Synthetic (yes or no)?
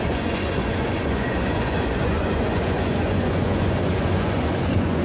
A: yes